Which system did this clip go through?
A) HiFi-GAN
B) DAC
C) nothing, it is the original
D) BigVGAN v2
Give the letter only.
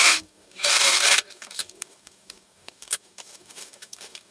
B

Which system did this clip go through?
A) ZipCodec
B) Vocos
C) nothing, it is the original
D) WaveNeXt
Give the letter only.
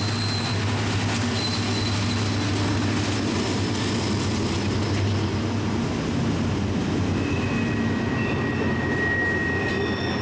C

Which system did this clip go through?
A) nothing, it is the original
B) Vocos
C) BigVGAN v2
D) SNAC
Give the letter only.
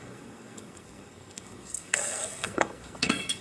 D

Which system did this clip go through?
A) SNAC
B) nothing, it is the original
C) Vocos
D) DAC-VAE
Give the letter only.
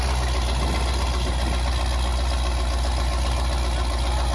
B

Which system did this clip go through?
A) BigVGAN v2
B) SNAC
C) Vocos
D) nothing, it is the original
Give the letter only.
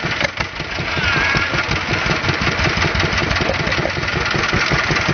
D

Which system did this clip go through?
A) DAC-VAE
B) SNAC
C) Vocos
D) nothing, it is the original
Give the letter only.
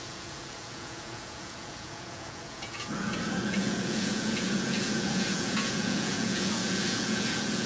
C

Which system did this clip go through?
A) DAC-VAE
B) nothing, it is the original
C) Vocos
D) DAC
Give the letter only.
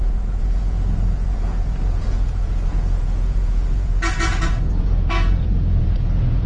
C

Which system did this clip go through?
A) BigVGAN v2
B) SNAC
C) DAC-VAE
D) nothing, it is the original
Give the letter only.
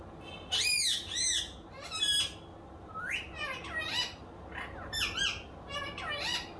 D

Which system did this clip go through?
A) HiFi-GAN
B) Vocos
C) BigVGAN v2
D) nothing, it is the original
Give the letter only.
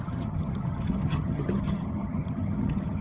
A